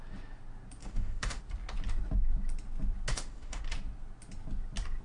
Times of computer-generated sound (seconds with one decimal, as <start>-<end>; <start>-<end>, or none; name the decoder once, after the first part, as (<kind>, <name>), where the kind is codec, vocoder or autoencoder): 0.8-1.4 (autoencoder, DAC-VAE); 3.1-3.6